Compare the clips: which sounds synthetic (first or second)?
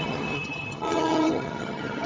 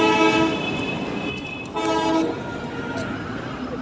first